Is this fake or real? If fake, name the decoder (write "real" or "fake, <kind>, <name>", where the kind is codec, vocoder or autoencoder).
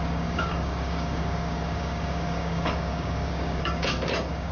fake, codec, DAC